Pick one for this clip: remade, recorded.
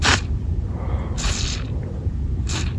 remade